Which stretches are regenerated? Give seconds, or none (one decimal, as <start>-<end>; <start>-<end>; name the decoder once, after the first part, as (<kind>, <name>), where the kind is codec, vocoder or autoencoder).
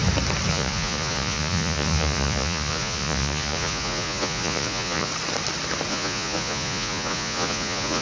0.5-5.1 (vocoder, Vocos); 5.9-8.0